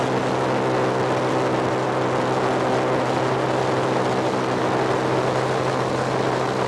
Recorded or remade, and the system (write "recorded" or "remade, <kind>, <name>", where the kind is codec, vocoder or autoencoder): recorded